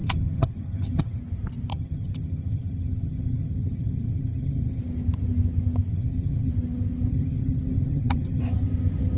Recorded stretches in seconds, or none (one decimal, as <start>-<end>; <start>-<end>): 1.2-1.7; 4.8-5.9; 6.5-7.1; 8.4-9.2